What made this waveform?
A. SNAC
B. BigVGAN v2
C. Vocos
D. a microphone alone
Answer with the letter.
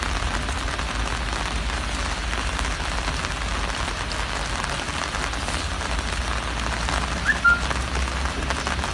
D